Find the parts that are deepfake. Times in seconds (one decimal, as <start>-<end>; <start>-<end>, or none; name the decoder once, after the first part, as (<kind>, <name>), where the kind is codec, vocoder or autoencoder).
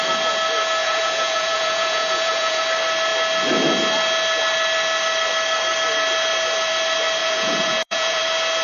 0.8-2.6 (vocoder, Vocos); 7.2-8.2